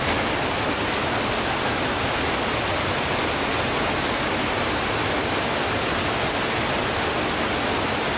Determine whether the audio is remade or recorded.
recorded